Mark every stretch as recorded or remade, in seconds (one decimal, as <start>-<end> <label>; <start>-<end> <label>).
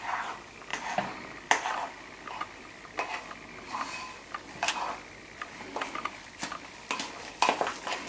0.0-8.1 recorded